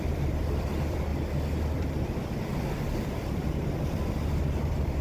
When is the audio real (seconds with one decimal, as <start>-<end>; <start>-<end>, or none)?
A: 1.1-1.8